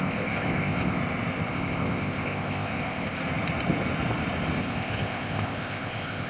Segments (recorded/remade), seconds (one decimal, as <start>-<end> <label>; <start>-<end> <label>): 0.0-1.0 remade; 1.0-1.5 recorded; 1.5-3.2 remade; 3.2-4.6 recorded; 4.6-6.3 remade

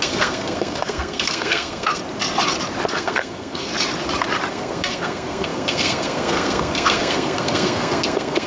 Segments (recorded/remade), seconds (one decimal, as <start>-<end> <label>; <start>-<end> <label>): 0.0-2.0 remade; 2.0-2.9 recorded; 2.9-3.7 remade; 3.7-4.5 recorded; 4.5-8.5 remade

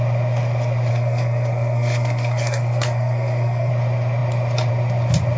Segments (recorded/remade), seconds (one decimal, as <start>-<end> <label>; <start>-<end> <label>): 0.0-0.9 recorded; 0.9-3.7 remade; 3.7-5.4 recorded

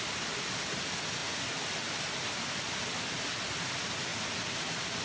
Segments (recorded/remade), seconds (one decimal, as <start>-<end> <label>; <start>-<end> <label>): 0.0-5.0 recorded

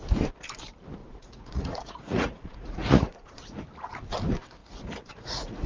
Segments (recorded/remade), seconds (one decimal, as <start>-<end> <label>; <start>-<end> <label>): 0.0-1.0 recorded; 1.0-3.6 remade; 3.6-4.6 recorded; 4.6-5.7 remade

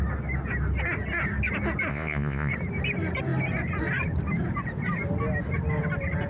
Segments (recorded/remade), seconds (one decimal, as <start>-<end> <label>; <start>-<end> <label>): 0.0-1.9 recorded; 1.9-2.5 remade; 2.5-6.3 recorded